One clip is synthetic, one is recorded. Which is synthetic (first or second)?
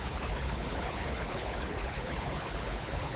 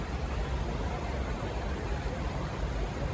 first